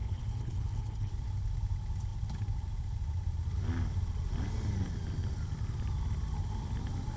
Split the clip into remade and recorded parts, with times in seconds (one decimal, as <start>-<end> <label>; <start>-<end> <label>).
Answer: 0.0-1.1 remade; 1.1-7.2 recorded